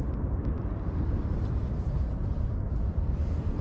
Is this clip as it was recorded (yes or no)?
no